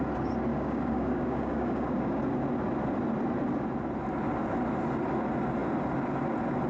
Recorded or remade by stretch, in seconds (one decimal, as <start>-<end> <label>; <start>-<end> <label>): 0.0-0.5 recorded; 0.5-2.2 remade; 2.2-6.7 recorded